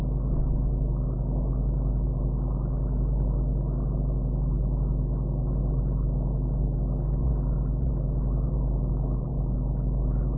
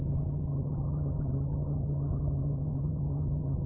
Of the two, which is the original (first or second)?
first